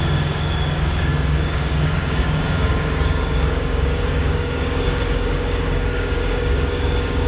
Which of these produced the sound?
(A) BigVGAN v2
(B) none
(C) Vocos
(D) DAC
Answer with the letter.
D